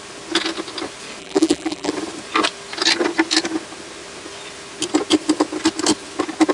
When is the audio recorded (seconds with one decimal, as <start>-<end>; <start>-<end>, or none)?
0.0-1.2; 1.9-6.5